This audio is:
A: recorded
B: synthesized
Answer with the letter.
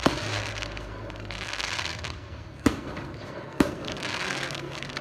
B